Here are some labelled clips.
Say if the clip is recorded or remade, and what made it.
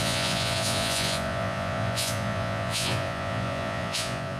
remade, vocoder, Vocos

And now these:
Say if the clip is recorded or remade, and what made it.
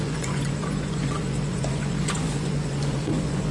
remade, vocoder, Vocos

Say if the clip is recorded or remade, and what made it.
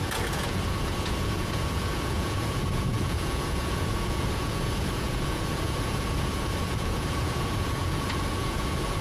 remade, vocoder, Vocos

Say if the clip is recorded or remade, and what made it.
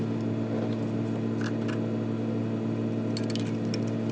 recorded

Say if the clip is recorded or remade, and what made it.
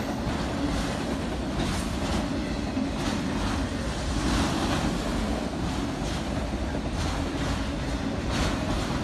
recorded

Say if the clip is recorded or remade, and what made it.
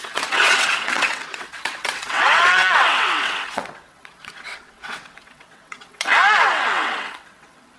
remade, vocoder, WaveNeXt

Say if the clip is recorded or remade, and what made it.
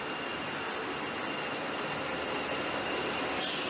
recorded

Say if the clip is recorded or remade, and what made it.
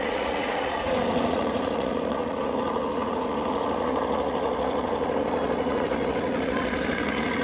remade, vocoder, Vocos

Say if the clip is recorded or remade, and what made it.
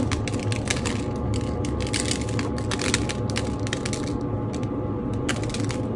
recorded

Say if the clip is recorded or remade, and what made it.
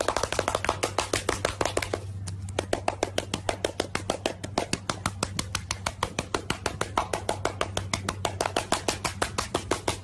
recorded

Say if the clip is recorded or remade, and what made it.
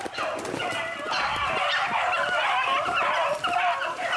recorded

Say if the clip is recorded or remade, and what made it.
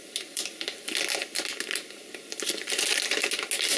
recorded